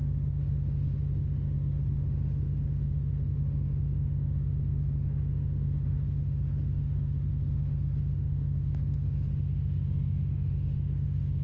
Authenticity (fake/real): fake